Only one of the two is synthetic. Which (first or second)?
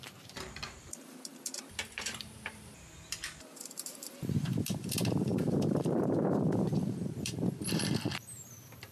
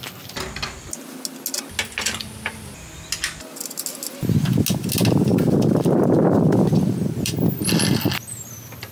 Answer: first